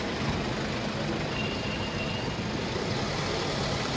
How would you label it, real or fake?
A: real